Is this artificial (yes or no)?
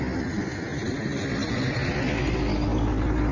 no